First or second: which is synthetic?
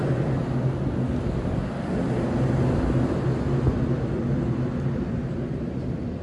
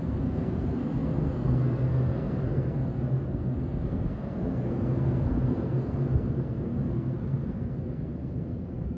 second